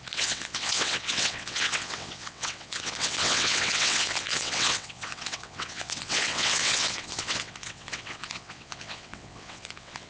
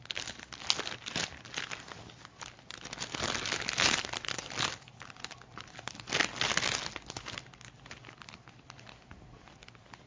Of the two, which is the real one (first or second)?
second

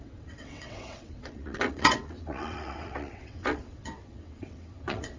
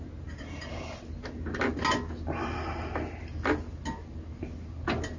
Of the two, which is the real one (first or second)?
second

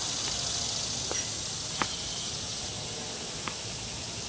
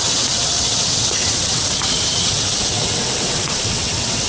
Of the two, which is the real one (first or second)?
first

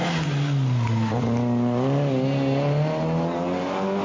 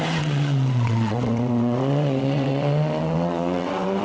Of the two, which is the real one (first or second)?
first